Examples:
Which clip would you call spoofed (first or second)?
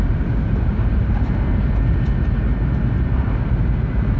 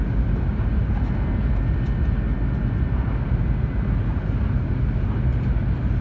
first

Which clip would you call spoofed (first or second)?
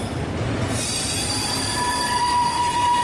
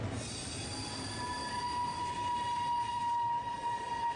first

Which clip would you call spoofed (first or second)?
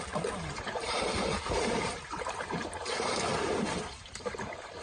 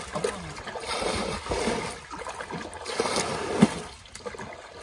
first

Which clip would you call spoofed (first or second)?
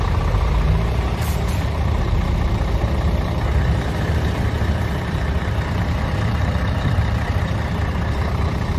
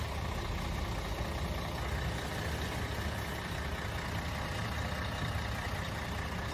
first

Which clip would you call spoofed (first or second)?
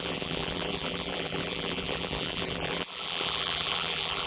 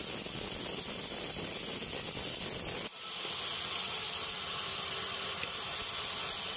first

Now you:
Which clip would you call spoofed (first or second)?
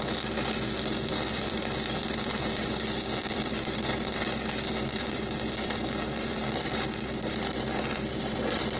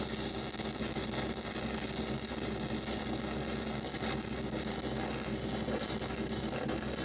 first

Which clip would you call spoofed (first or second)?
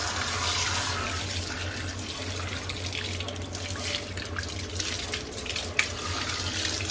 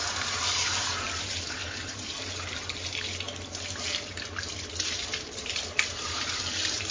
second